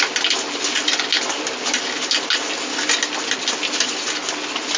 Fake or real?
real